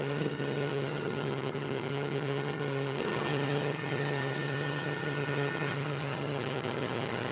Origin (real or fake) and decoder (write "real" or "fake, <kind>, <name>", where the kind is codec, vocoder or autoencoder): fake, vocoder, HiFi-GAN